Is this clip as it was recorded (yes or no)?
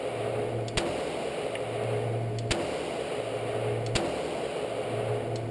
yes